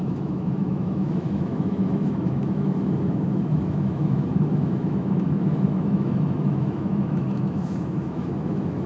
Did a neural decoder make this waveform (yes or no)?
yes